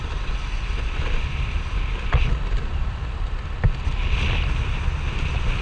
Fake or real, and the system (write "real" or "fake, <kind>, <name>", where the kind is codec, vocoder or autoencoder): real